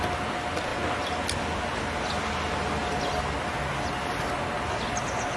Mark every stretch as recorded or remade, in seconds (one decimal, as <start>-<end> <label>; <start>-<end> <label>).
0.0-5.4 recorded